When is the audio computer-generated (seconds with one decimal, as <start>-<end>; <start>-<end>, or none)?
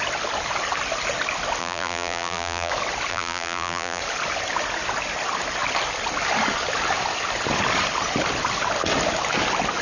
1.6-2.7; 3.1-4.0